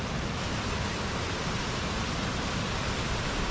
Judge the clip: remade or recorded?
recorded